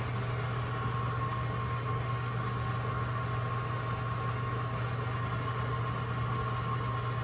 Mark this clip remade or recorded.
recorded